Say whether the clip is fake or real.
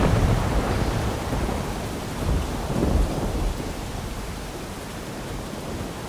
fake